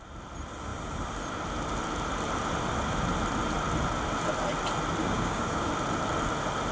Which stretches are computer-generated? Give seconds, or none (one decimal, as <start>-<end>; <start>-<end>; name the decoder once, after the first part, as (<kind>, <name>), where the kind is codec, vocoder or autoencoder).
5.0-5.7 (codec, DAC)